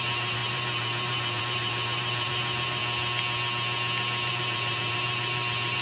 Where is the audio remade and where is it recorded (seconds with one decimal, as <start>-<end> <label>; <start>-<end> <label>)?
0.0-2.8 remade; 2.8-4.3 recorded; 4.3-5.8 remade